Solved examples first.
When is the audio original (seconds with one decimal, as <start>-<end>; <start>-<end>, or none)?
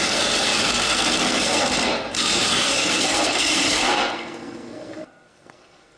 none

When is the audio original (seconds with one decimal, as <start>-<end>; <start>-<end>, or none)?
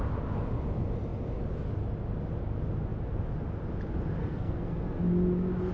0.0-4.2; 5.0-5.7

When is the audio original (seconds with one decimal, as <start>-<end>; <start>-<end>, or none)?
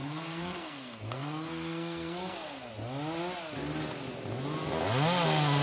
2.7-5.6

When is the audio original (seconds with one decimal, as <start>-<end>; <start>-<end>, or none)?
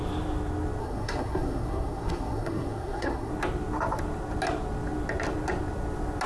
0.0-0.8; 3.3-6.3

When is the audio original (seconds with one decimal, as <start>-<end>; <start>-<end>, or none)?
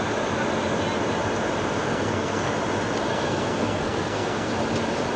0.0-1.8; 2.5-3.1; 4.5-5.2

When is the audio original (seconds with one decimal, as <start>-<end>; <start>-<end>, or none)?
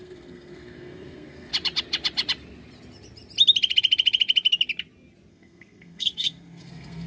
1.5-5.3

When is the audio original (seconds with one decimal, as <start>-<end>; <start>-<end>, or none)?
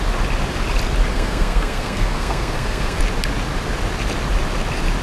0.0-1.1; 3.0-5.0